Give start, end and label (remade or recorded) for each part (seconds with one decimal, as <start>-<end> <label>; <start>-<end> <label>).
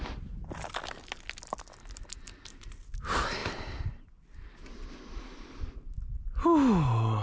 0.0-3.4 recorded; 3.4-5.5 remade; 5.5-7.2 recorded